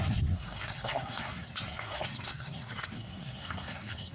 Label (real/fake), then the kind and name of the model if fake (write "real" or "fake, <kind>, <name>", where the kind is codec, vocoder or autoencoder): fake, codec, SNAC